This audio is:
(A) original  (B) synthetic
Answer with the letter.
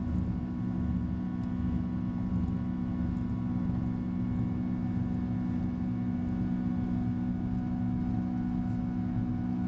A